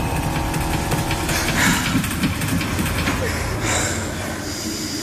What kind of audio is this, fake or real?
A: real